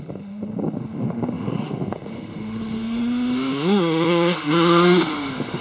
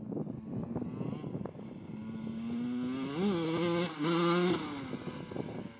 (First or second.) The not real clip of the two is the first